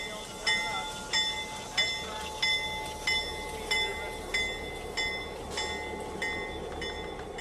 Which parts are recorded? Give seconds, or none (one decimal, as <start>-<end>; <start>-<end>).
0.0-7.4